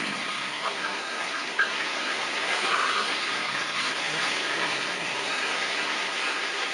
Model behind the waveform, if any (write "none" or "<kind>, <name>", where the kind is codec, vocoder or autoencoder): codec, SNAC